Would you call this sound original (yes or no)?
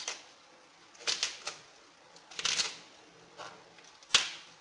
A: yes